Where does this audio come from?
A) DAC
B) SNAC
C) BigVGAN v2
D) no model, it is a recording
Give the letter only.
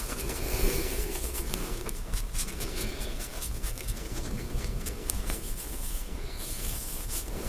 B